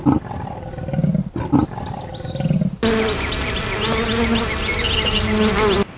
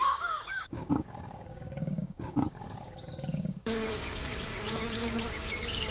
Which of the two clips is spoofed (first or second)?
second